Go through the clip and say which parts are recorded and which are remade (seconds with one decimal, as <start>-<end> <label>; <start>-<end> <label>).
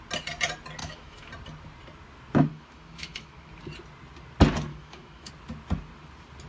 0.0-0.8 recorded; 0.8-1.3 remade; 1.3-2.5 recorded; 2.5-3.5 remade; 3.5-4.7 recorded; 4.7-5.3 remade; 5.3-6.5 recorded